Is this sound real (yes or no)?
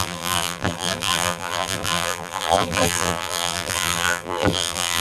no